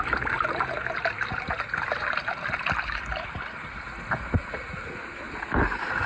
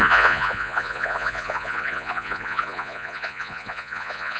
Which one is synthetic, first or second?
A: second